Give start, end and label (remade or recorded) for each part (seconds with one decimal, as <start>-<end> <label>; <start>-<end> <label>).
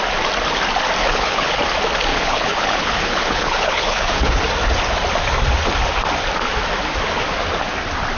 0.0-1.0 recorded; 1.0-1.6 remade; 1.6-2.1 recorded; 2.1-4.4 remade; 4.4-8.2 recorded